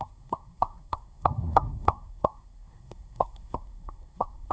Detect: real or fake fake